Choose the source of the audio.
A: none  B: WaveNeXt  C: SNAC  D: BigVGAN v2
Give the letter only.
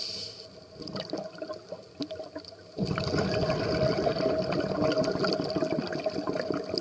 A